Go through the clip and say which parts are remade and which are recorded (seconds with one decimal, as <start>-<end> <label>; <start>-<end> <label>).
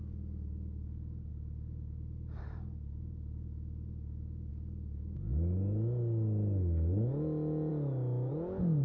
0.0-8.8 recorded